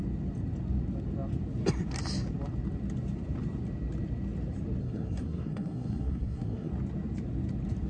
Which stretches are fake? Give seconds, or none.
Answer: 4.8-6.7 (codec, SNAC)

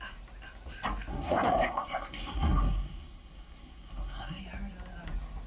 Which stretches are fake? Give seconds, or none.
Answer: 1.1-4.4 (codec, SNAC)

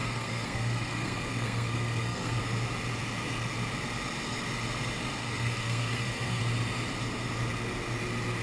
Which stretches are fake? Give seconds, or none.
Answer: 0.0-2.4 (codec, SNAC); 5.2-6.4